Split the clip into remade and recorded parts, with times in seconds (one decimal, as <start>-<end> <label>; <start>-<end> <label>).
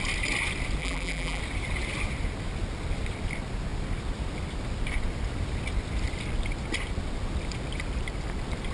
0.0-0.8 recorded; 0.8-1.4 remade; 1.4-8.7 recorded